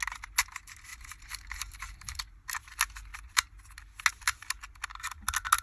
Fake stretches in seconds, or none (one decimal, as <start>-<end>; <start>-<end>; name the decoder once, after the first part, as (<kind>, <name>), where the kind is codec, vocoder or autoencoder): 0.9-2.2 (vocoder, BigVGAN v2)